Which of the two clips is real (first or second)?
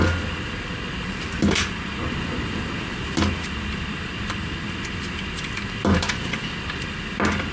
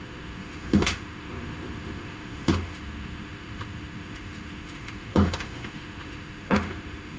first